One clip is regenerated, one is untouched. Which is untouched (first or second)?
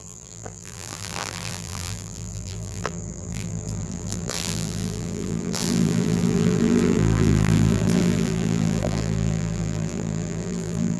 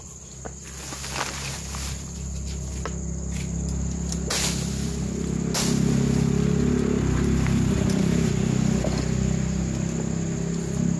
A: second